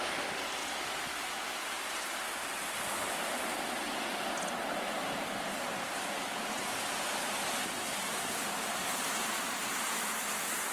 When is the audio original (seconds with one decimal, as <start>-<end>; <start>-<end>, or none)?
0.0-0.6; 4.5-10.7

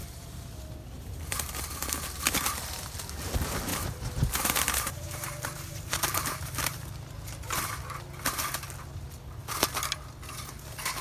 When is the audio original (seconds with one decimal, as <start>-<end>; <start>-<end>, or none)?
0.5-3.7; 7.1-11.0

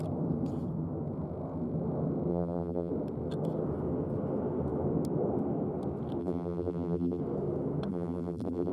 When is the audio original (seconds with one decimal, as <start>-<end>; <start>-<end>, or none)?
0.0-2.3; 2.9-6.2; 7.2-7.9

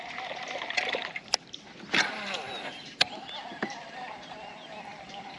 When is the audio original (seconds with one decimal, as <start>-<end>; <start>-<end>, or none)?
0.0-2.1